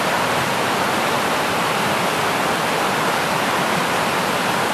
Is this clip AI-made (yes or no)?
no